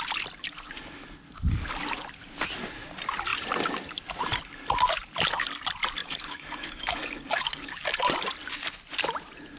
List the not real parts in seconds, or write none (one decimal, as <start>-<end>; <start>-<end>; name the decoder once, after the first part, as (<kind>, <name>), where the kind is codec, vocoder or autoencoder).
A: 6.0-8.1 (codec, DAC)